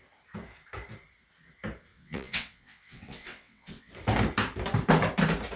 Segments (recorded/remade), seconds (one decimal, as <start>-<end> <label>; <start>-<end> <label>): 0.0-1.9 recorded; 1.9-3.9 remade; 3.9-5.6 recorded

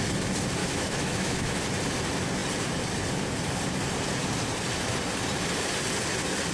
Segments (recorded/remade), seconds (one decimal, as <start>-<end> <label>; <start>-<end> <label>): 0.0-0.6 recorded; 0.6-1.6 remade; 1.6-6.5 recorded

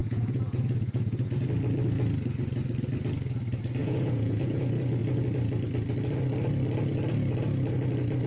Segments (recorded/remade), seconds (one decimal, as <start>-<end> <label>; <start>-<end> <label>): 0.0-1.3 remade; 1.3-3.8 recorded; 3.8-4.6 remade; 4.6-8.3 recorded

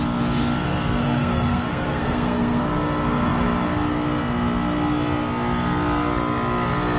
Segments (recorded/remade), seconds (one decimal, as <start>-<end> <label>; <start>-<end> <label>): 0.0-1.0 recorded; 1.0-2.6 remade; 2.6-7.0 recorded